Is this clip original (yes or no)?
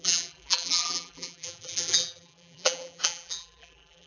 no